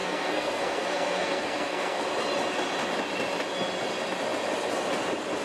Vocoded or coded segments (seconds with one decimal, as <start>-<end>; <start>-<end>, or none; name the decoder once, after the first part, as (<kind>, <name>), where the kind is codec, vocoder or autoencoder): 0.0-2.0 (codec, SNAC)